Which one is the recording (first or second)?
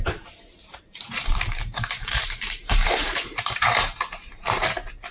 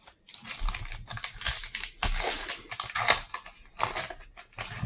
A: second